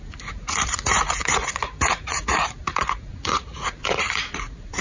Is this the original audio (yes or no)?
no